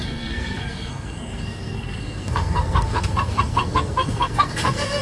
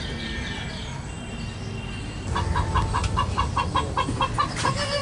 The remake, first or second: first